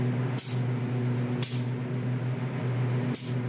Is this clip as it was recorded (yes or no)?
yes